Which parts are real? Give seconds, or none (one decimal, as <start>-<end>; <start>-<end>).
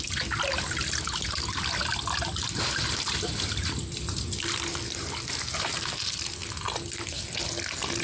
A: 0.0-8.0